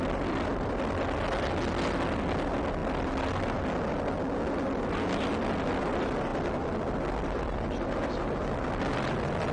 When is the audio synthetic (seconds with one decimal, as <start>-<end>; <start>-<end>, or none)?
none

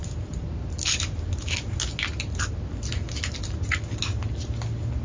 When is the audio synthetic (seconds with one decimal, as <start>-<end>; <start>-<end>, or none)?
0.0-0.5

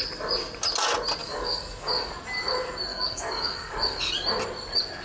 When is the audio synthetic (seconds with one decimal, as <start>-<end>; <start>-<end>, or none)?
1.2-2.1; 2.9-4.1

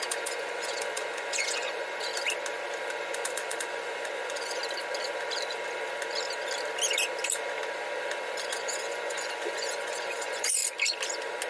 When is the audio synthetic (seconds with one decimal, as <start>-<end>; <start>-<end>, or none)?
0.0-2.1; 3.0-4.6; 8.4-10.6